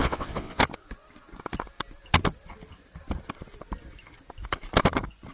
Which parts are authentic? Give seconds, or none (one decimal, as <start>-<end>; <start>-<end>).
0.6-5.3